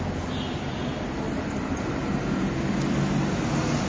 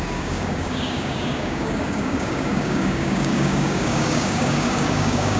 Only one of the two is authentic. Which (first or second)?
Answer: first